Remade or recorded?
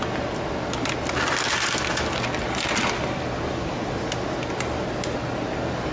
recorded